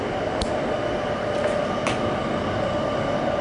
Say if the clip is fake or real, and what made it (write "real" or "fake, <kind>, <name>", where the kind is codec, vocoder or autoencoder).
real